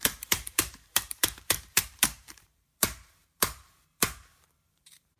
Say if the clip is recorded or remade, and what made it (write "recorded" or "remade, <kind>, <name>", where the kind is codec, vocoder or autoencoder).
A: remade, vocoder, BigVGAN v2